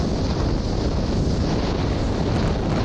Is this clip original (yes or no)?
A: yes